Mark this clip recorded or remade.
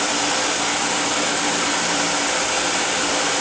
recorded